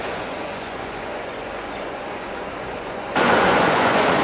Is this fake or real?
fake